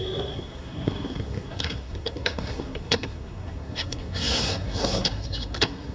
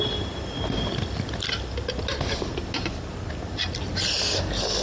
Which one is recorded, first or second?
second